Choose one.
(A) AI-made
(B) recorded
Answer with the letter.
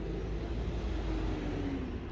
B